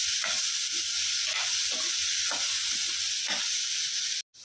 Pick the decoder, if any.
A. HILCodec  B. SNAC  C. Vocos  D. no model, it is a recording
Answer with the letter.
D